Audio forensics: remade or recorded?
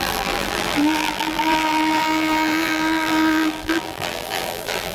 remade